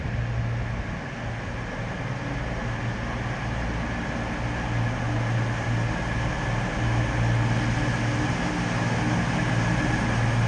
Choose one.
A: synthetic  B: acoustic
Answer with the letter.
B